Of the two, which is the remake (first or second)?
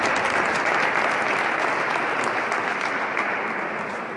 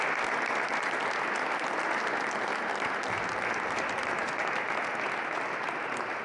first